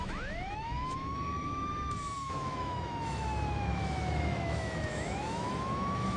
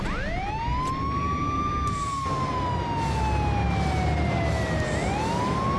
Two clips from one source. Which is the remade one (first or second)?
first